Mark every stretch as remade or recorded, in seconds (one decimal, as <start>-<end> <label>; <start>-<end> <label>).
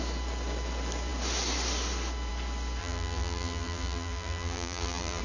0.0-2.8 recorded; 2.8-5.2 remade